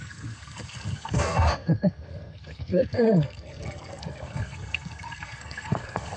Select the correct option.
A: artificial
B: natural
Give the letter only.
A